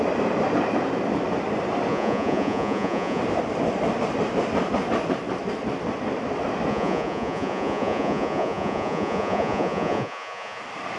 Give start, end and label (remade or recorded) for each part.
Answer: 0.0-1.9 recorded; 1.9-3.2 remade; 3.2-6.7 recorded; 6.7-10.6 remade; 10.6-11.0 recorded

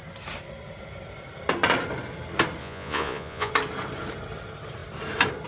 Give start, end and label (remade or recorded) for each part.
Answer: 0.0-2.6 recorded; 2.6-3.5 remade; 3.5-5.5 recorded

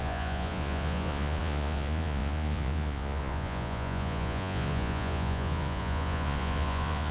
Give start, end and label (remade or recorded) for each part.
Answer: 0.0-7.1 remade

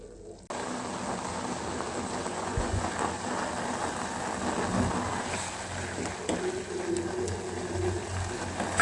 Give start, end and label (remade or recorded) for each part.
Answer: 0.0-2.3 recorded; 2.3-2.9 remade; 2.9-8.8 recorded

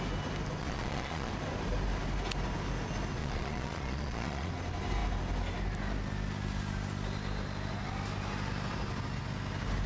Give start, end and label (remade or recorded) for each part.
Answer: 0.0-0.6 recorded; 0.6-1.3 remade; 1.3-3.2 recorded; 3.2-4.5 remade; 4.5-9.9 recorded